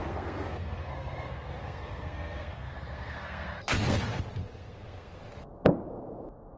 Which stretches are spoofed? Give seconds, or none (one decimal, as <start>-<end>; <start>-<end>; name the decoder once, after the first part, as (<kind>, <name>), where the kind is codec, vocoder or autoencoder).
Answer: 0.0-4.0 (codec, SNAC); 4.4-5.2